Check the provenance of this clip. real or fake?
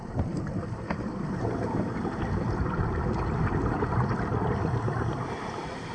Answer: real